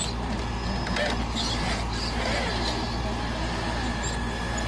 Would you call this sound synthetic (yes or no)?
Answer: no